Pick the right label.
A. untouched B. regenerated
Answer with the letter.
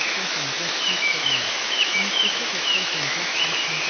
B